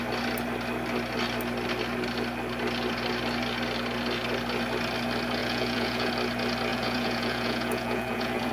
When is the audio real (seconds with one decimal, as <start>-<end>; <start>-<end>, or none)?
0.0-5.4; 6.1-6.7